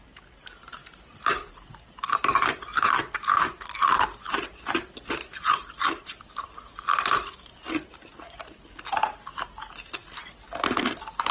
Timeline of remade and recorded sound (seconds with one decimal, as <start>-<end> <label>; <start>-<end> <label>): 0.0-0.8 recorded; 0.8-1.5 remade; 1.5-11.3 recorded